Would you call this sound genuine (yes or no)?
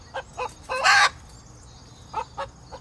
yes